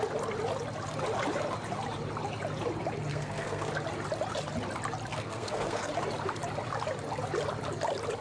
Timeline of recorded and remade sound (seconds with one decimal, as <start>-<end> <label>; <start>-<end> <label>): 0.0-3.1 recorded; 3.1-3.7 remade; 3.7-5.1 recorded; 5.1-5.9 remade; 5.9-8.2 recorded